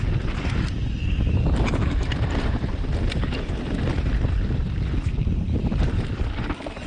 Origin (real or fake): fake